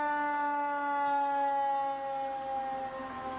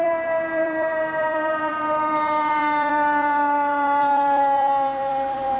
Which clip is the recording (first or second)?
first